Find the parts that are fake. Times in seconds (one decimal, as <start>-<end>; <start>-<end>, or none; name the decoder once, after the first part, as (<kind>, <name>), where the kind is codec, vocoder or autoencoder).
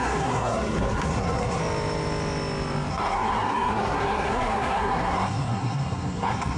0.0-1.6 (codec, SNAC); 2.9-6.6